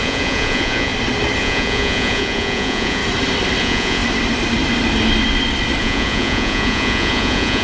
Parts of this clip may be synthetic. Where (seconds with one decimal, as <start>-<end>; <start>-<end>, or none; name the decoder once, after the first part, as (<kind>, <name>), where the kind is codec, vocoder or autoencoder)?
0.0-0.9 (vocoder, Vocos); 1.4-3.0; 3.6-4.0; 5.8-7.6